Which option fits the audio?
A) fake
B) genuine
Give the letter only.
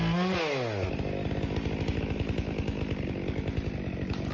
B